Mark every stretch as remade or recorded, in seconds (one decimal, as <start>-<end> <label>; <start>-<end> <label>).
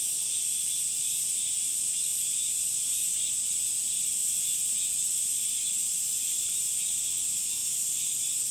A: 0.0-5.8 recorded; 5.8-6.6 remade; 6.6-7.6 recorded; 7.6-8.5 remade